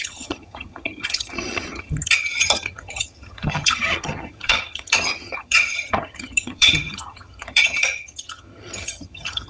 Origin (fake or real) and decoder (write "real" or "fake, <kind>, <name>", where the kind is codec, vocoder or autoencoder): fake, vocoder, HiFi-GAN